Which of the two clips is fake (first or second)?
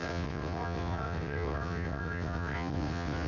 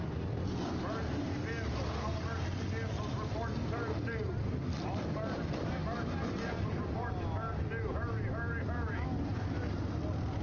first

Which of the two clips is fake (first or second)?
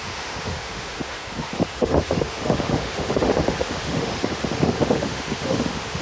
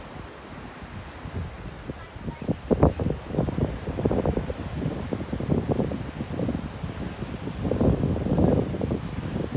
first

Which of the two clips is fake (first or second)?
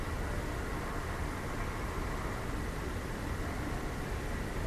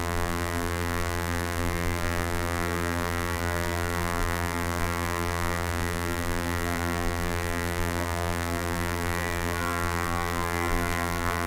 second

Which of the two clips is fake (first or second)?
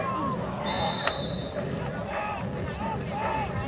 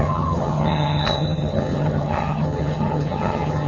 second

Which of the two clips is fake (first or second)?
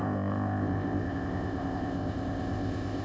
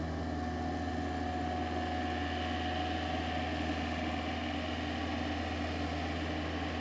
first